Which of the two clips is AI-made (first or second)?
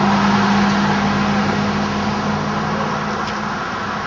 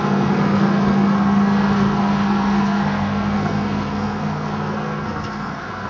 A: second